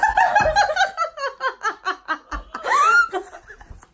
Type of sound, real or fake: real